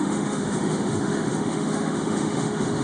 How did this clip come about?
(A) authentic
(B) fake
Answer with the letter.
B